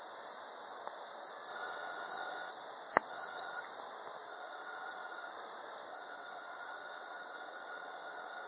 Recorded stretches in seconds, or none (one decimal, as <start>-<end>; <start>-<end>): 0.0-1.5; 2.5-3.1; 3.6-4.3; 5.3-5.9